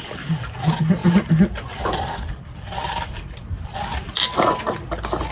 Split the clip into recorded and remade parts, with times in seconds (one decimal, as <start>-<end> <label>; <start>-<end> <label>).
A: 0.0-5.3 recorded